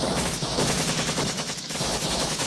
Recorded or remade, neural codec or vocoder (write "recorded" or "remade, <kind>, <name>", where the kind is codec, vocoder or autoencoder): remade, autoencoder, DAC-VAE